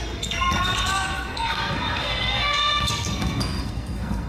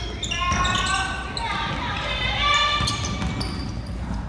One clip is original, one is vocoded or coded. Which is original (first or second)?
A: second